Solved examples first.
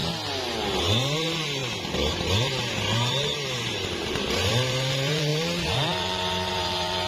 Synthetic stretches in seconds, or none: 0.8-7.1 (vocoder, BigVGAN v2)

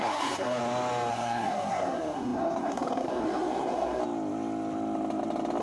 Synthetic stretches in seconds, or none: 0.0-0.6 (codec, SNAC); 1.1-4.0

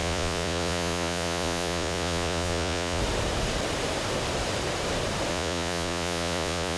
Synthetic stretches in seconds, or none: 0.0-3.0 (vocoder, Vocos); 5.3-6.8

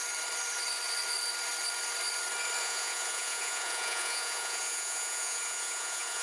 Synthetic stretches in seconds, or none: 2.6-6.2 (vocoder, Vocos)

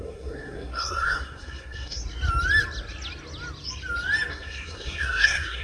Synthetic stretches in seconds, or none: 0.0-2.0 (codec, SNAC); 4.3-5.6